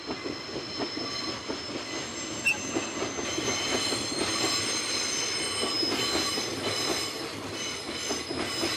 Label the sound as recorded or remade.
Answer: recorded